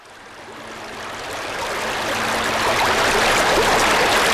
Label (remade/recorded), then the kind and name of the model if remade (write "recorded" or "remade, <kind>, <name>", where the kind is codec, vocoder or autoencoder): recorded